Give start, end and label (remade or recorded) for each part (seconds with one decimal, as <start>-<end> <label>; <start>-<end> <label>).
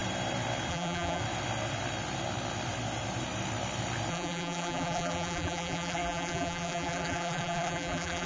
0.0-0.7 recorded; 0.7-1.2 remade; 1.2-4.1 recorded; 4.1-8.3 remade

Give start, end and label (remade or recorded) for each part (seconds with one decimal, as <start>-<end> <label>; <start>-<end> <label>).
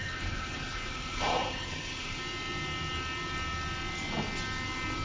0.0-2.2 remade; 2.2-5.0 recorded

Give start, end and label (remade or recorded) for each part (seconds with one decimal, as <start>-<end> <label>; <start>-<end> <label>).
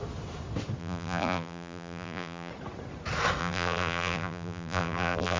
0.0-0.8 recorded; 0.8-2.5 remade; 2.5-3.4 recorded; 3.4-5.4 remade